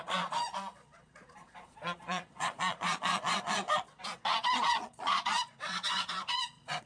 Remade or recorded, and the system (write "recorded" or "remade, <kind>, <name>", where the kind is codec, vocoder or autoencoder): remade, vocoder, Vocos